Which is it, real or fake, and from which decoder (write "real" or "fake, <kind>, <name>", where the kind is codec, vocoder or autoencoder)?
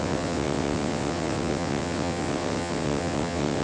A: fake, vocoder, WaveNeXt